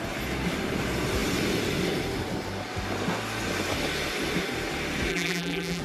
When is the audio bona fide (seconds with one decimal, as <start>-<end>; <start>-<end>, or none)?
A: 0.0-5.1